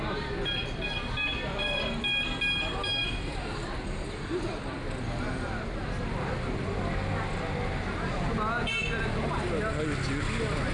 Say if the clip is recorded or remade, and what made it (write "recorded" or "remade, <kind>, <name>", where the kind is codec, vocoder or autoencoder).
recorded